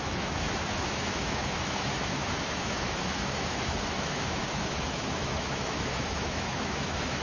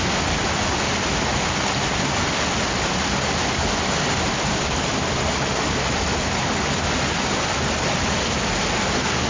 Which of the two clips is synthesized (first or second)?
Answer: first